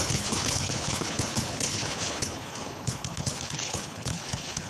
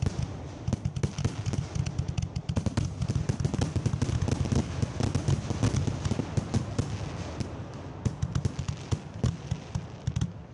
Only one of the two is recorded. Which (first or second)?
second